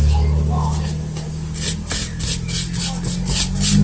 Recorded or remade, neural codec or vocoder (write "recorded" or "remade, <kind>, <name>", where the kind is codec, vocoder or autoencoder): recorded